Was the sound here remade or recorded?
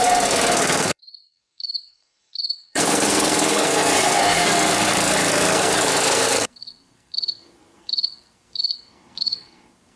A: remade